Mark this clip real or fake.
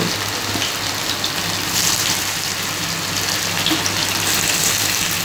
real